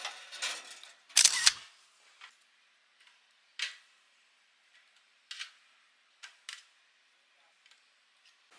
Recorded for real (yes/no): yes